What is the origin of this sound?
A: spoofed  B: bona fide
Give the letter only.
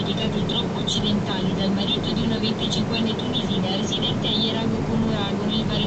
B